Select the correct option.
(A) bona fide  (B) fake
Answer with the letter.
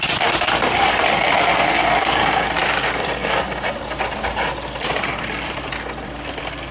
B